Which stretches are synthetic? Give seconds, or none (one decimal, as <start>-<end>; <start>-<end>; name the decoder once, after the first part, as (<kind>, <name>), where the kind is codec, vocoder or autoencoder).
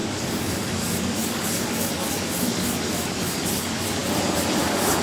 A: 0.0-4.0 (codec, DAC); 4.6-5.0